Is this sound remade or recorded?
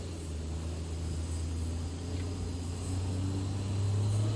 recorded